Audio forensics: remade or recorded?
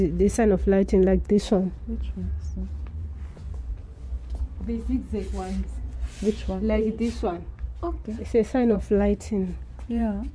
remade